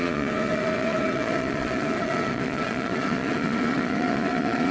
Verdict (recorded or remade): remade